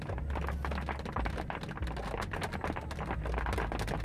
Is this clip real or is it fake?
real